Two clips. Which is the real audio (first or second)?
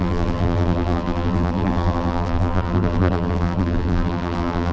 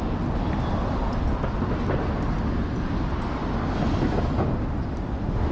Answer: second